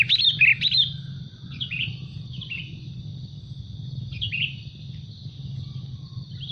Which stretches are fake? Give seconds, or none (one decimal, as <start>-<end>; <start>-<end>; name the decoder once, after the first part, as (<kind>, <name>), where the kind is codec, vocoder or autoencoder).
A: 0.5-2.6 (vocoder, BigVGAN v2)